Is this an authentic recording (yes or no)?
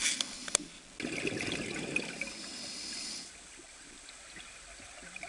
yes